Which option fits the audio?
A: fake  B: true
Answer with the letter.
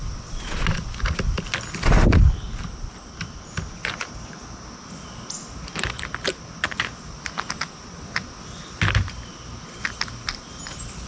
B